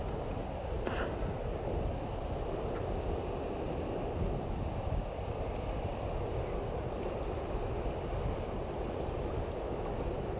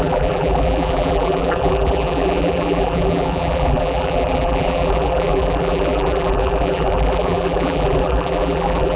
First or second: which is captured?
first